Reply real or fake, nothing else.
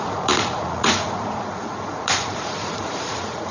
fake